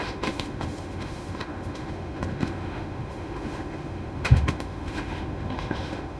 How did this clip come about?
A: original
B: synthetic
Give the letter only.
B